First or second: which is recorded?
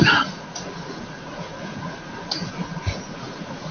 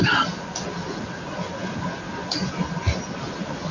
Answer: second